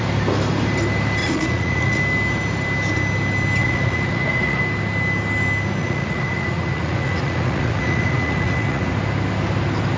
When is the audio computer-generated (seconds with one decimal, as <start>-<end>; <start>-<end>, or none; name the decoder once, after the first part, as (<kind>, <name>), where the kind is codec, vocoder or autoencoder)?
1.2-2.0 (vocoder, Vocos); 3.6-4.6; 5.8-8.9